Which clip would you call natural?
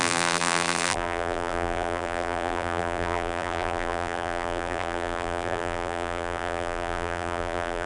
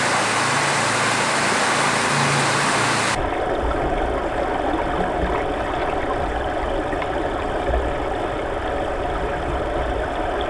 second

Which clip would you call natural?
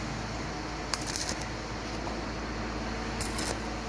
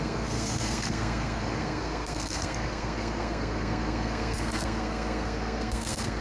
first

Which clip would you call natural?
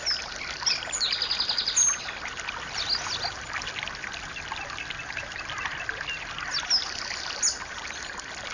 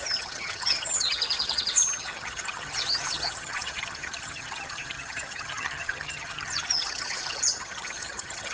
first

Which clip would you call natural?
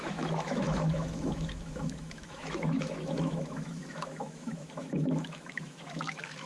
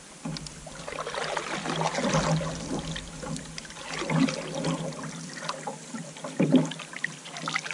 second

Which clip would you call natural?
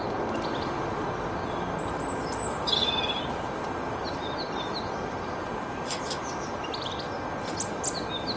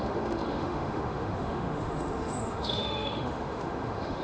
first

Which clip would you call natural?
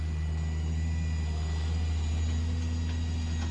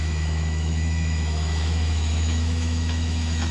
first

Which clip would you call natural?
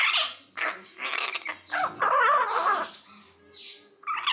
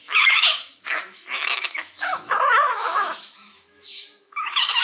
first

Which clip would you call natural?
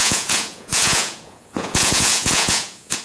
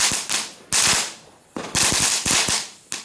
second